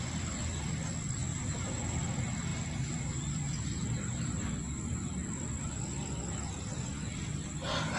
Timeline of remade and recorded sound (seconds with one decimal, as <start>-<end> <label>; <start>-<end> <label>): 0.0-0.4 recorded; 0.4-0.9 remade; 0.9-1.3 recorded; 1.3-1.8 remade; 1.8-2.5 recorded; 2.5-4.8 remade; 4.8-8.0 recorded